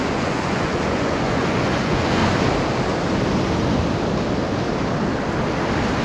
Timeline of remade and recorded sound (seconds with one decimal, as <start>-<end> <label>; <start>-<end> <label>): 0.0-2.2 remade; 2.2-6.0 recorded